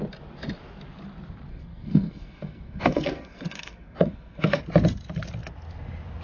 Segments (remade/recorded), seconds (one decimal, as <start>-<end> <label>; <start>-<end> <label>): 0.0-1.5 recorded; 1.5-4.6 remade; 4.6-6.2 recorded